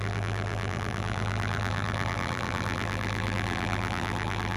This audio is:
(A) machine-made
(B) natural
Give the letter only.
A